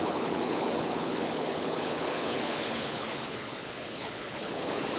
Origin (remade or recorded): remade